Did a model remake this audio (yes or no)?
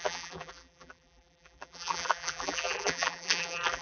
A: yes